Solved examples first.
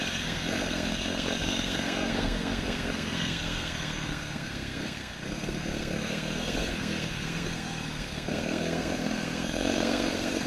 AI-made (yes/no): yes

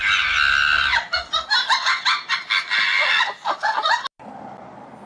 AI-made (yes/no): no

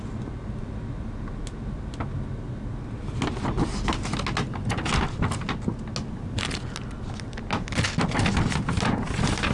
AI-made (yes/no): no